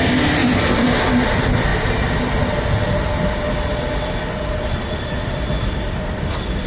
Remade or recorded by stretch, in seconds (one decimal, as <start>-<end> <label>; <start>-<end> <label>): 0.0-1.7 remade; 1.7-5.6 recorded; 5.6-6.7 remade